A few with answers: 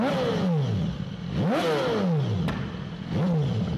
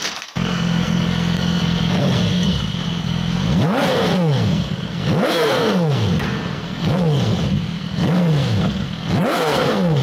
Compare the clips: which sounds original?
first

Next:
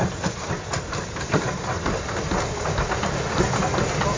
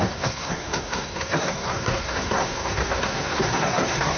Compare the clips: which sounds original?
first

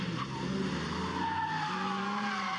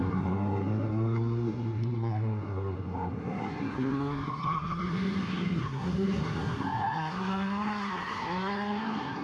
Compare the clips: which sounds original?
first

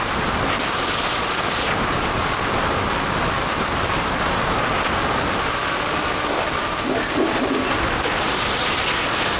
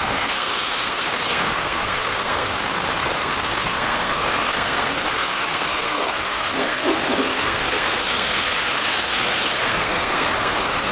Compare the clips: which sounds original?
first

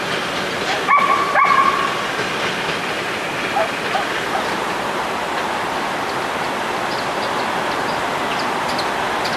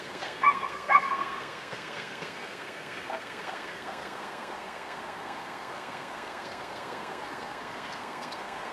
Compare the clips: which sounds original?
first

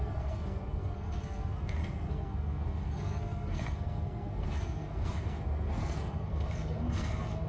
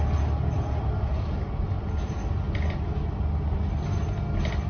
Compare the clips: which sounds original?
second